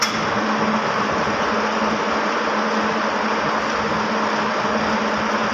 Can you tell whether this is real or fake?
real